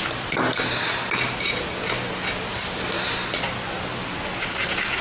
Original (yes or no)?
yes